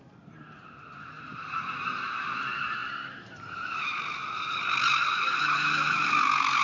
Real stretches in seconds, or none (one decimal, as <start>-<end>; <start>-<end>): 0.0-6.6